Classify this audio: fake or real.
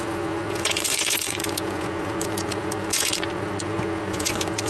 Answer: fake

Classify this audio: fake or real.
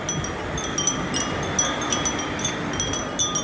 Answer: real